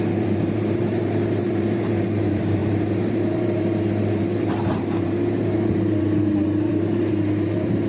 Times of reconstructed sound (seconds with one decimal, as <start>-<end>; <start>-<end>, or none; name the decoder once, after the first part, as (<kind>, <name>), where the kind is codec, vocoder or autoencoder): 0.0-7.9 (vocoder, BigVGAN v2)